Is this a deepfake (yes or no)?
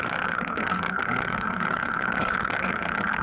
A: yes